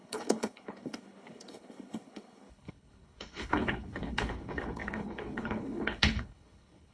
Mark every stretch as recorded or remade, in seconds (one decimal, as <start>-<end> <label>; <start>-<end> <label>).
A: 0.0-6.9 remade